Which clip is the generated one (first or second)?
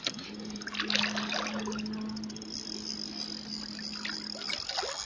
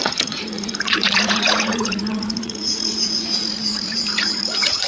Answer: second